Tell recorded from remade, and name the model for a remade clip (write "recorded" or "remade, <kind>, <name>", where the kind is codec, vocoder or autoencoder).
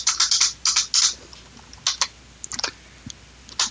recorded